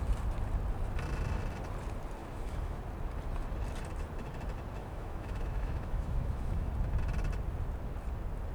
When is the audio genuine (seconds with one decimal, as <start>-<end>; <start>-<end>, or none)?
0.0-2.2; 2.8-4.8; 6.7-8.5